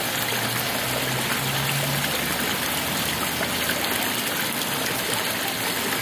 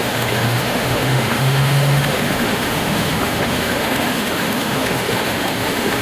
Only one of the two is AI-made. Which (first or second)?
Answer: second